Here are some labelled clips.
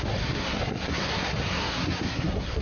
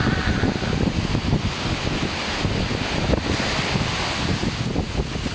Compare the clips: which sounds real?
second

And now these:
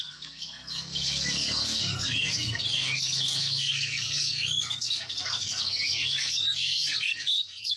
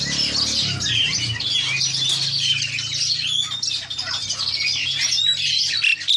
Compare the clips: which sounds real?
second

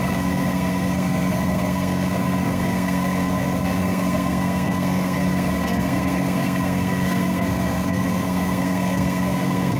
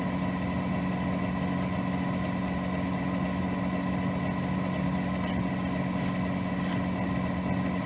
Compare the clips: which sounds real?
second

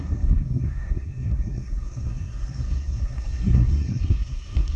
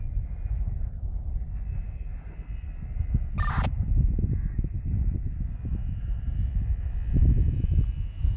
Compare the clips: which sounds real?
second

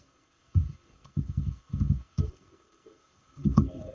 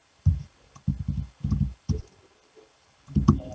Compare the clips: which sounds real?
second